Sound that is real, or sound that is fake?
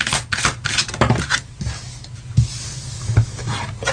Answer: real